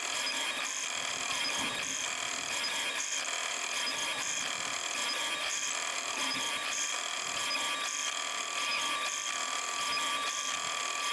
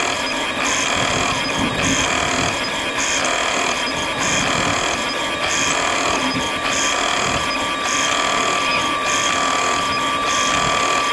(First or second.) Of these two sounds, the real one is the second